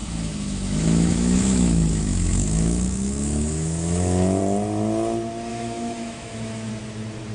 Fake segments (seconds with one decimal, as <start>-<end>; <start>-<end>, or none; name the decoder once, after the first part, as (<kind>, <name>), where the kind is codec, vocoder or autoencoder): 0.0-4.4 (autoencoder, DAC-VAE); 5.5-6.7